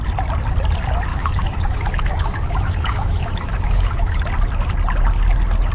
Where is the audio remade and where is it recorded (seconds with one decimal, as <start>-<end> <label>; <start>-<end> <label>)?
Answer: 0.0-1.1 recorded; 1.1-4.2 remade; 4.2-5.7 recorded